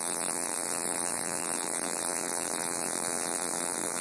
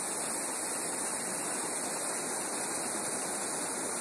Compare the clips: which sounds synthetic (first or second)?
first